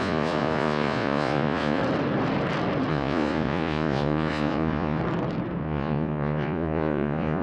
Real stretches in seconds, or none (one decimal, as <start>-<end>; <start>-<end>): 1.8-2.9; 5.0-5.6